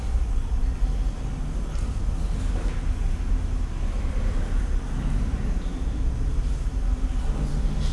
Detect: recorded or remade recorded